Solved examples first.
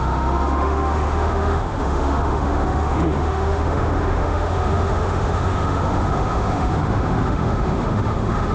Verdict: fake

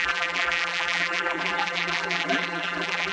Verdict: fake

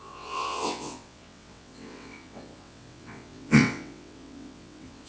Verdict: fake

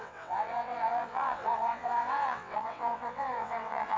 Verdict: fake